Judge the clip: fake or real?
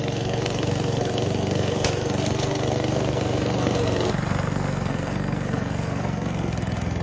fake